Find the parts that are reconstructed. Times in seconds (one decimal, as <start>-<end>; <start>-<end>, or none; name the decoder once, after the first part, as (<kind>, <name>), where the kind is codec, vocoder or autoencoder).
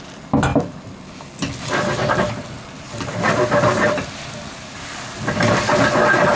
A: none